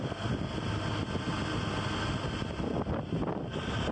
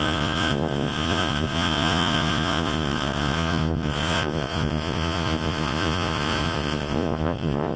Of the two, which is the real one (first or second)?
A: first